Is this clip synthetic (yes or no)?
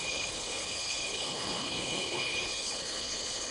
yes